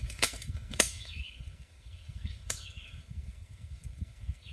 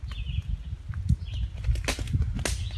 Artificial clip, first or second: first